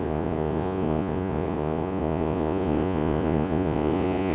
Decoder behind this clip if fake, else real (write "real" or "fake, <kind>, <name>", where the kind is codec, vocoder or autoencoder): fake, vocoder, Vocos